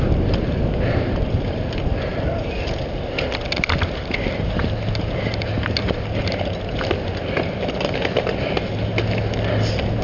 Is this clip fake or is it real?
real